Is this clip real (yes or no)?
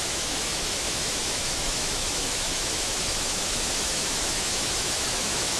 no